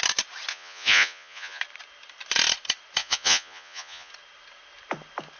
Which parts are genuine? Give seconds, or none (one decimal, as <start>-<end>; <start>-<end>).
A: 0.0-0.5; 1.6-3.0; 4.1-5.4